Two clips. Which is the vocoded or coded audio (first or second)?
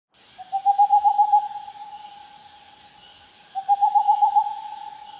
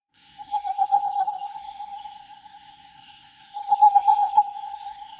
second